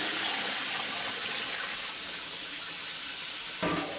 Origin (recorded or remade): recorded